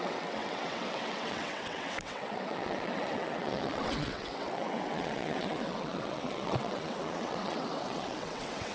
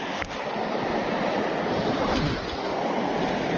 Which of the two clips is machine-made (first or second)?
first